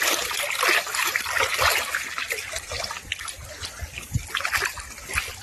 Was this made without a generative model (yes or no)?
yes